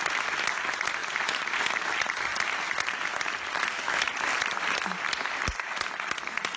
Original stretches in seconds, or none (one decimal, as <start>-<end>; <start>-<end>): 0.0-6.6